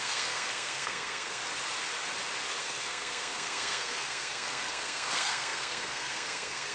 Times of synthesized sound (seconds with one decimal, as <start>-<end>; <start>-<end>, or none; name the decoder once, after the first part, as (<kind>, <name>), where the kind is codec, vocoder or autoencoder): 0.0-1.4 (codec, SNAC); 2.6-6.7